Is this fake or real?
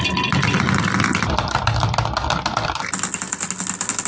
real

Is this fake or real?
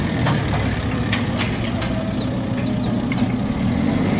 real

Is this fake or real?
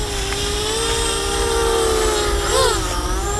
real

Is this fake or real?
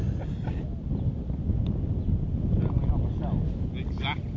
real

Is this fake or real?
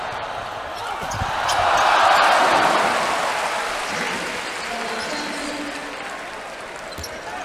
real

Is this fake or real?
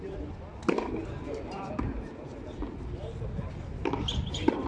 real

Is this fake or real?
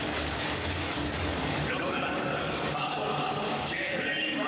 fake